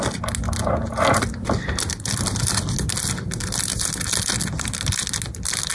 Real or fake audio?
real